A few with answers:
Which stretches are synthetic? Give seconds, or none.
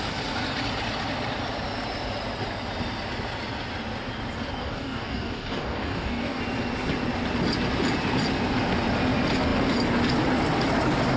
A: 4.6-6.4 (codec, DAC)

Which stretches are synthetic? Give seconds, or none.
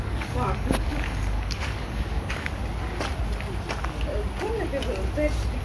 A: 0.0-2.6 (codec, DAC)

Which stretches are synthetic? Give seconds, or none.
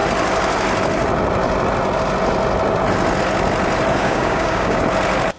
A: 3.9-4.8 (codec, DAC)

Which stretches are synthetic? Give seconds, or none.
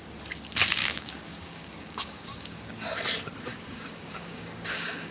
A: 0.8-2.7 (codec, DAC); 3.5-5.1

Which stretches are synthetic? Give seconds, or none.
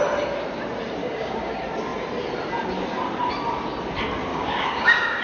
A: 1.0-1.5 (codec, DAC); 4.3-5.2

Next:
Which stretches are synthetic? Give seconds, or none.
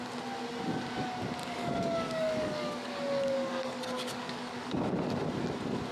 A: 1.4-4.9 (codec, DAC)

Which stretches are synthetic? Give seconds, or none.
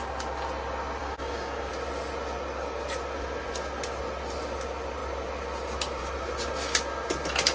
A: 1.0-1.7 (codec, DAC)